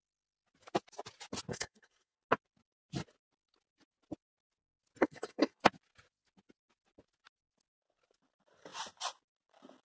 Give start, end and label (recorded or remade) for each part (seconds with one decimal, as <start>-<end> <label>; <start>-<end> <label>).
0.0-1.5 recorded; 1.5-2.2 remade; 2.2-5.0 recorded; 5.0-5.6 remade; 5.6-9.9 recorded

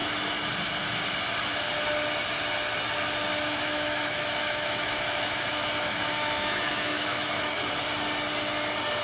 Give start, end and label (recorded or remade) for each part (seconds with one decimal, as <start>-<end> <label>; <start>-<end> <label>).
0.0-3.3 recorded; 3.3-7.7 remade; 7.7-9.0 recorded

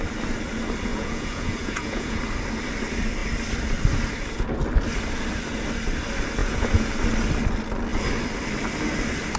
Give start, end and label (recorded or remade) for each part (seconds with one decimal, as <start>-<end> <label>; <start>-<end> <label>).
0.0-0.9 recorded; 0.9-2.2 remade; 2.2-6.4 recorded; 6.4-6.9 remade; 6.9-9.4 recorded

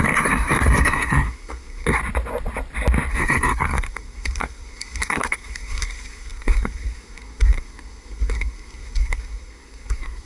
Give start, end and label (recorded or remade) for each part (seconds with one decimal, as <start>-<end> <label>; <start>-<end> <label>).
0.0-2.0 remade; 2.0-3.1 recorded; 3.1-10.2 remade

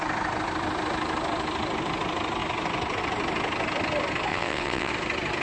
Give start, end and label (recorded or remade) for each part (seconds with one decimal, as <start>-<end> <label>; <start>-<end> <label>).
0.0-4.3 recorded; 4.3-4.9 remade; 4.9-5.4 recorded